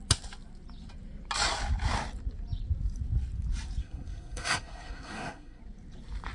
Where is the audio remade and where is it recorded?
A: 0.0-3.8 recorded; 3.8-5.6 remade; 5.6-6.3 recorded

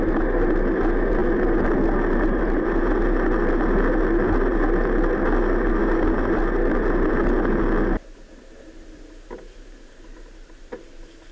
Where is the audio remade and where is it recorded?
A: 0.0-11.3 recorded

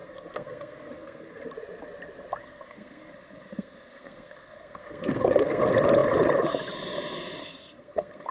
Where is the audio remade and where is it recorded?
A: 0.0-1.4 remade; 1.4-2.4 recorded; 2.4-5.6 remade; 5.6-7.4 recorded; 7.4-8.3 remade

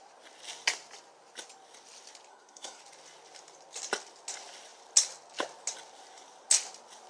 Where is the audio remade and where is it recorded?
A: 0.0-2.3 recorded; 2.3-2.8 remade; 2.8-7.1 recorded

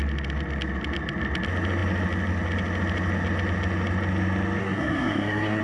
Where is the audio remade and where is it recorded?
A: 0.0-4.6 recorded; 4.6-5.6 remade